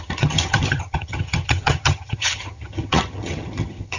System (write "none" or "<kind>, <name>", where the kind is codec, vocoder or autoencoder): vocoder, HiFi-GAN